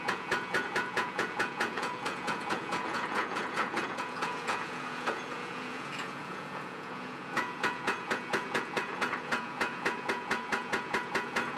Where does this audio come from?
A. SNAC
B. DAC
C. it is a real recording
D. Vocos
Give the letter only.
D